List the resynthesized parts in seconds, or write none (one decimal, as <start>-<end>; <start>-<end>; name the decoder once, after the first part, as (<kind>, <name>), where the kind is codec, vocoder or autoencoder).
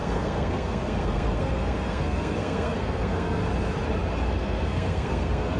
0.0-3.4 (codec, SNAC); 4.3-5.6